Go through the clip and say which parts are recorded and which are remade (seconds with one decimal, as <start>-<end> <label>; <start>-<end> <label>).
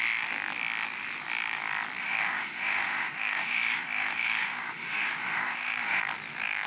0.0-2.0 recorded; 2.0-6.0 remade; 6.0-6.7 recorded